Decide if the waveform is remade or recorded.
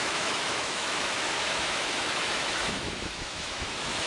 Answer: remade